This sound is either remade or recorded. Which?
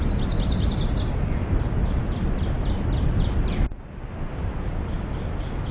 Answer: recorded